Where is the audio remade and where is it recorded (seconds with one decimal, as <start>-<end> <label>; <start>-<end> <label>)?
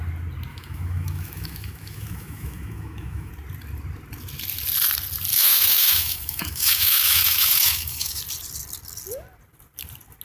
0.0-0.5 recorded; 0.5-3.3 remade; 3.3-5.3 recorded; 5.3-8.2 remade; 8.2-10.2 recorded